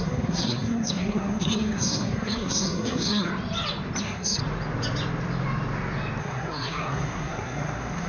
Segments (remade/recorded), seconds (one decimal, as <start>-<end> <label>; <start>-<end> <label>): 0.0-3.3 remade; 3.3-4.0 recorded; 4.0-4.4 remade; 4.4-6.2 recorded; 6.2-8.1 remade